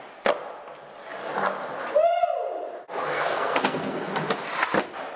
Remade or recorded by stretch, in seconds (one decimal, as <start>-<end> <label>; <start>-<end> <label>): 0.0-3.0 recorded; 3.0-4.1 remade; 4.1-5.2 recorded